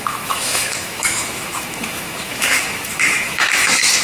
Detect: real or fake fake